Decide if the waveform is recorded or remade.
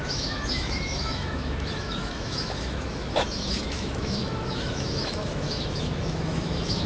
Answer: remade